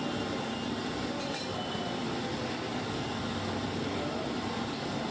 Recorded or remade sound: recorded